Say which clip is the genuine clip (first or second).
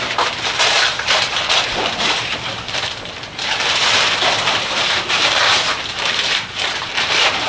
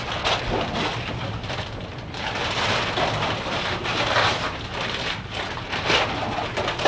second